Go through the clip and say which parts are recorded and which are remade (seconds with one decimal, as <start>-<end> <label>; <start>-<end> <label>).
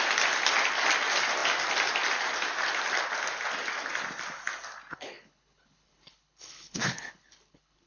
0.0-4.9 recorded; 4.9-7.9 remade